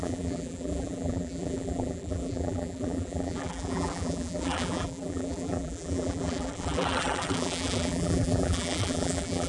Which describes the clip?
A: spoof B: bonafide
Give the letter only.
A